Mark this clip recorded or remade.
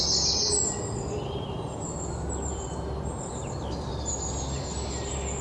recorded